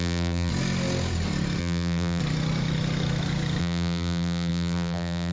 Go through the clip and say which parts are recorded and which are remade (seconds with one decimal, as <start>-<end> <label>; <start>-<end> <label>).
0.0-0.5 remade; 0.5-1.6 recorded; 1.6-2.2 remade; 2.2-3.6 recorded; 3.6-5.3 remade